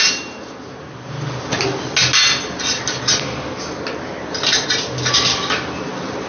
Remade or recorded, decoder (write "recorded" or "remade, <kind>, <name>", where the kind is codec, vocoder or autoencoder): recorded